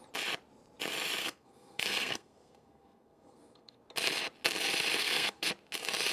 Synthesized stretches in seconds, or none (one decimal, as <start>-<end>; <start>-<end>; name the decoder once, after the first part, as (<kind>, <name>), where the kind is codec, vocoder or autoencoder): 1.2-3.8 (codec, SNAC); 5.0-5.5